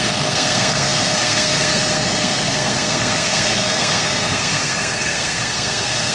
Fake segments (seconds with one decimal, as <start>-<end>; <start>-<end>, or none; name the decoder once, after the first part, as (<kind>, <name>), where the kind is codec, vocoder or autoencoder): 0.0-6.1 (codec, SNAC)